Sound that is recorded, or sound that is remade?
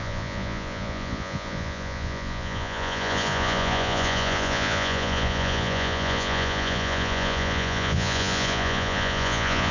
remade